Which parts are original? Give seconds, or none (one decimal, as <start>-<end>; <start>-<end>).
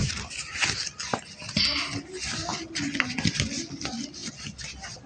2.5-3.7; 4.2-5.1